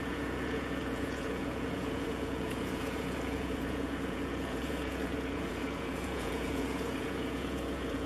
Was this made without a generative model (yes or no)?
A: no